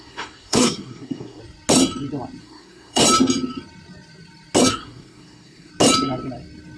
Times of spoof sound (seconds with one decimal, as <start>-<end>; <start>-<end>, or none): 0.0-1.4; 2.4-3.0; 4.7-5.7